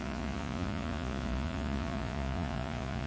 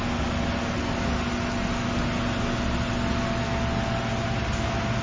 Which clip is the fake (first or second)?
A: first